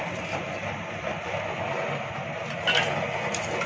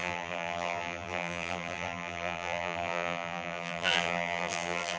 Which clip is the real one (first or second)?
first